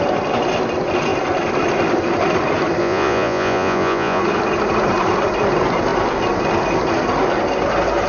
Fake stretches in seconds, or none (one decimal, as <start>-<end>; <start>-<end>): 2.8-4.2